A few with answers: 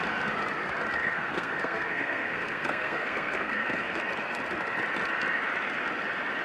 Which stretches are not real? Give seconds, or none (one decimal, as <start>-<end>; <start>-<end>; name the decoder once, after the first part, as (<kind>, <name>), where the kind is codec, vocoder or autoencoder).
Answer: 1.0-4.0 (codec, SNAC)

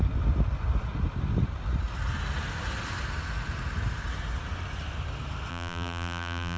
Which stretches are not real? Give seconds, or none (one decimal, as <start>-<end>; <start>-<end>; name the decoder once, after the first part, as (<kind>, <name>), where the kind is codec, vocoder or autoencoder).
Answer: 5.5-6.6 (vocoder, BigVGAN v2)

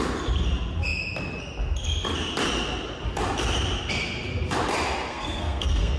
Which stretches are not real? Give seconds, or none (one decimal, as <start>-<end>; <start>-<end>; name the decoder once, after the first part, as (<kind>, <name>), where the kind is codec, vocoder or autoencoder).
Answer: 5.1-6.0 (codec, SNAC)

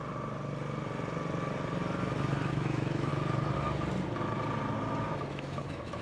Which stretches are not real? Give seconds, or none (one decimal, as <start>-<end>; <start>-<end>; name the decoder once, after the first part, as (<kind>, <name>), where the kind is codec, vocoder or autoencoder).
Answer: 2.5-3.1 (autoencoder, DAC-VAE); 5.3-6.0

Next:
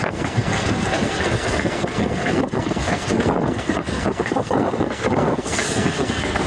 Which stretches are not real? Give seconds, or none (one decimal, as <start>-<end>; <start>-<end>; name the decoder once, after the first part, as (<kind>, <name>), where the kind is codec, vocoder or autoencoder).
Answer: 0.0-6.5 (codec, SNAC)

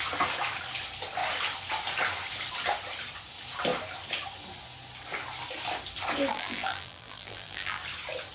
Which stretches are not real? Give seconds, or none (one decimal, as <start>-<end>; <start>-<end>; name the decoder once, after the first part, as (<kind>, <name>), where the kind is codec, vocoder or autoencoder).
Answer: 6.3-7.8 (vocoder, BigVGAN v2)